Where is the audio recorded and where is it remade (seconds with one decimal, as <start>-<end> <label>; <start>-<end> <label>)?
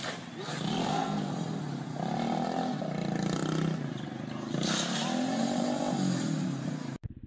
0.0-0.8 recorded; 0.8-1.3 remade; 1.3-7.3 recorded